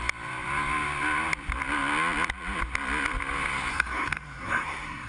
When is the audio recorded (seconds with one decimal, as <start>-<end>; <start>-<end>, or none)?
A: 0.0-3.7